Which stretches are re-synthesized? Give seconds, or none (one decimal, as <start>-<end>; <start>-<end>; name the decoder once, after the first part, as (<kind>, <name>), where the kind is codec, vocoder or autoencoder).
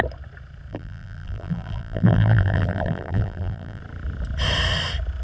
0.7-3.8 (vocoder, BigVGAN v2)